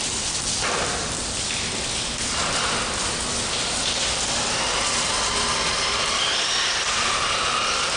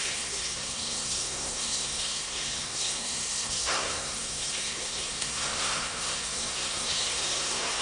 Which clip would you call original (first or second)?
first